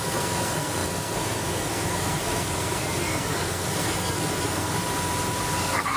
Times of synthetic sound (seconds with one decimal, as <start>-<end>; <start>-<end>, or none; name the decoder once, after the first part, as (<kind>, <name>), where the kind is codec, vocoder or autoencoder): 0.0-4.8 (codec, SNAC); 5.6-6.0